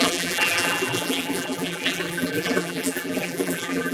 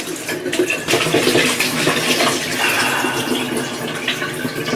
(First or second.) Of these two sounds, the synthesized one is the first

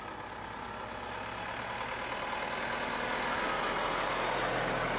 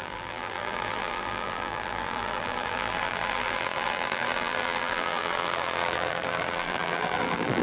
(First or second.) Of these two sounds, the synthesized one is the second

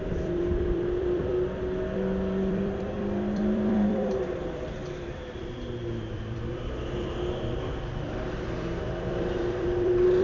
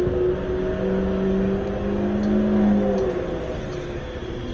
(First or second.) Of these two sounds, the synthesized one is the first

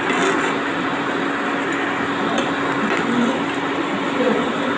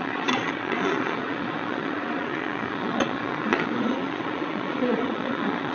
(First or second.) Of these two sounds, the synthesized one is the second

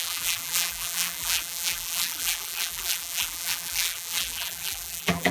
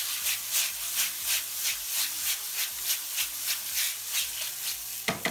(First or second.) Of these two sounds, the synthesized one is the first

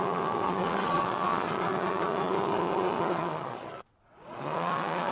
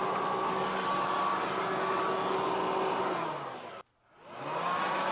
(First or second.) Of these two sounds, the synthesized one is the first